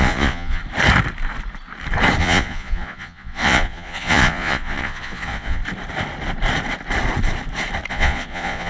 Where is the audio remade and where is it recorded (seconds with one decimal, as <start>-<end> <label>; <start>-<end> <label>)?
0.0-0.6 remade; 0.6-2.2 recorded; 2.2-5.6 remade; 5.6-7.9 recorded; 7.9-8.7 remade